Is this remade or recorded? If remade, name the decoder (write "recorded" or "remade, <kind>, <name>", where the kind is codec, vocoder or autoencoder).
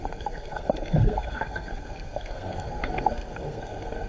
remade, codec, SNAC